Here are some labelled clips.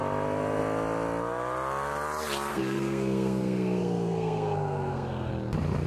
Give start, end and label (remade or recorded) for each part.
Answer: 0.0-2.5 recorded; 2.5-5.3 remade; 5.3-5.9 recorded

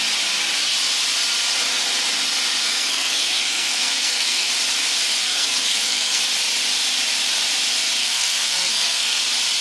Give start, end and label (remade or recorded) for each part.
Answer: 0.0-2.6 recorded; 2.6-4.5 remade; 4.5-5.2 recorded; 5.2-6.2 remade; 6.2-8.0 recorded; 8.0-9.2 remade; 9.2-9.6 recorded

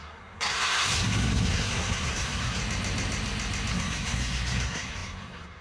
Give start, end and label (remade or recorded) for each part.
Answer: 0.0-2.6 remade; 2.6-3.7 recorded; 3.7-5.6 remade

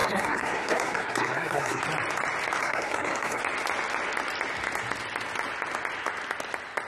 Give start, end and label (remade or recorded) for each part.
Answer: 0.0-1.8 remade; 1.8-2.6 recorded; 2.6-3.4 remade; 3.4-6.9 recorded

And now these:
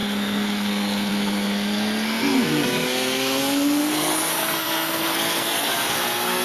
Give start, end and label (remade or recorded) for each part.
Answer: 0.0-6.4 remade

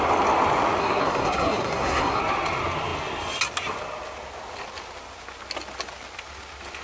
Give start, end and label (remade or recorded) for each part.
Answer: 0.0-0.8 recorded; 0.8-2.2 remade; 2.2-6.8 recorded

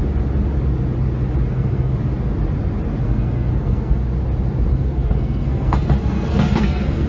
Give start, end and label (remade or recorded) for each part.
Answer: 0.0-1.5 recorded; 1.5-1.9 remade; 1.9-3.0 recorded; 3.0-4.0 remade; 4.0-4.7 recorded; 4.7-7.1 remade

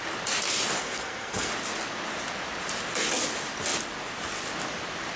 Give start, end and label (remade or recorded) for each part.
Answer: 0.0-0.8 recorded; 0.8-1.5 remade; 1.5-5.2 recorded